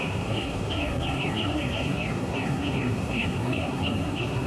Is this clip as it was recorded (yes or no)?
no